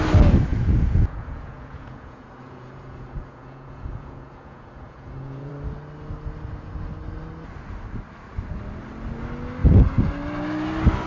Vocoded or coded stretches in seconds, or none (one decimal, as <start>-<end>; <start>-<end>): 0.5-5.5